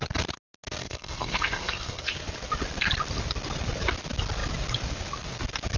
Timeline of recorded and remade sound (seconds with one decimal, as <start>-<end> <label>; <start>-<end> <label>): 0.0-0.8 recorded; 0.8-2.1 remade; 2.1-5.8 recorded